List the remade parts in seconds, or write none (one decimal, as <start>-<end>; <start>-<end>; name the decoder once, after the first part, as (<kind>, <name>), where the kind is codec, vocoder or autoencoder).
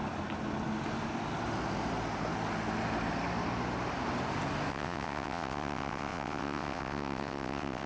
4.7-7.9 (vocoder, WaveNeXt)